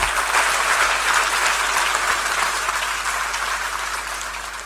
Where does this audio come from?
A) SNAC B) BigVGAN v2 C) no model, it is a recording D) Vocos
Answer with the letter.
C